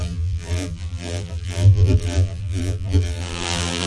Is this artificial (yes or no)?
yes